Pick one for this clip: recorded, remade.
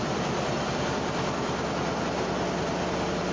recorded